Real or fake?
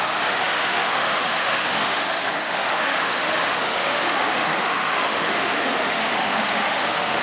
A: fake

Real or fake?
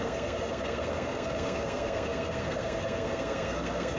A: fake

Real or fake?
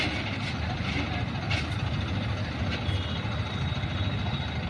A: real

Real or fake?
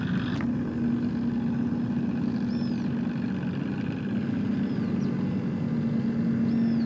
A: real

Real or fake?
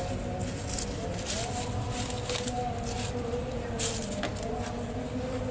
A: real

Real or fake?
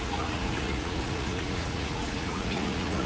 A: fake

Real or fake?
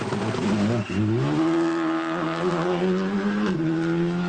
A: real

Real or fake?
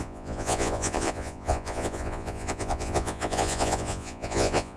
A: fake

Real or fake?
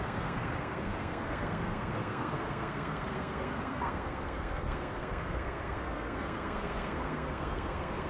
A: fake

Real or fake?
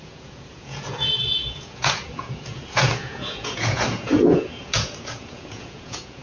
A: fake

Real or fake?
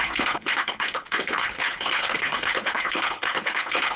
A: fake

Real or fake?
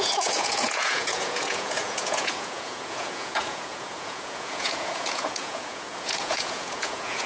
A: fake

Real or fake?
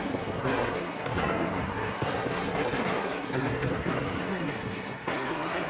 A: fake